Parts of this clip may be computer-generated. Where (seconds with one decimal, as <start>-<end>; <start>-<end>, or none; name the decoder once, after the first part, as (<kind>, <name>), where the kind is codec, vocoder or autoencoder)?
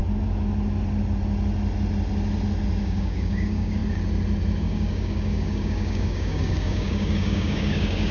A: 2.8-3.8 (codec, DAC); 4.6-8.1